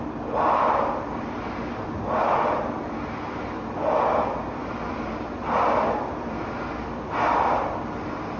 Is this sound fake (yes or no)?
no